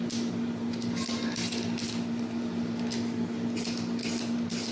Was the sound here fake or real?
real